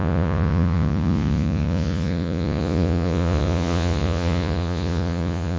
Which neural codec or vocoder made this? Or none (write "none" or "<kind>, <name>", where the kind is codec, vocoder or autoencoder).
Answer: vocoder, Vocos